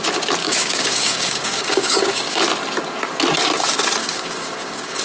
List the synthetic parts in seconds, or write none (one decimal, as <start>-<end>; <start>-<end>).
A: 0.4-2.4; 4.0-5.0